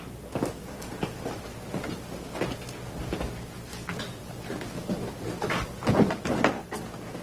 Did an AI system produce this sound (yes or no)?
no